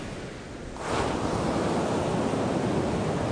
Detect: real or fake real